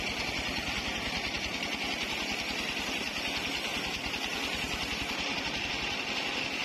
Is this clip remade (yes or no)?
no